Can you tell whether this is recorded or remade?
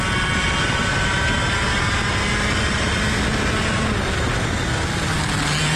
recorded